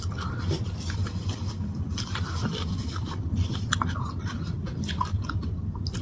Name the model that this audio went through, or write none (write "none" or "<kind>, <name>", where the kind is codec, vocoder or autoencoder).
none